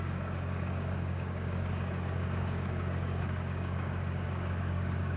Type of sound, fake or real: fake